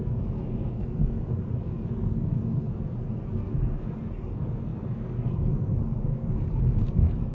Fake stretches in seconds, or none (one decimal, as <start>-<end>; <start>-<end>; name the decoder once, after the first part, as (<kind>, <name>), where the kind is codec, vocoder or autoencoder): 0.0-7.3 (codec, SNAC)